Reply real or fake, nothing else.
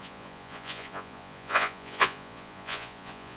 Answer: fake